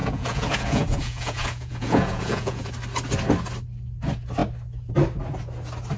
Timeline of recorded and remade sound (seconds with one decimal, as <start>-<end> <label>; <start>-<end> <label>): 0.0-2.7 remade; 2.7-6.0 recorded